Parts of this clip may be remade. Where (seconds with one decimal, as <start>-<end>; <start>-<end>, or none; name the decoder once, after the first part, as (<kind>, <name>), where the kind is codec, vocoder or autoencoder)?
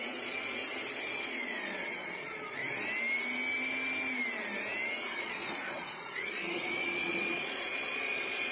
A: 0.0-0.6 (vocoder, Vocos); 1.2-2.6; 5.2-8.5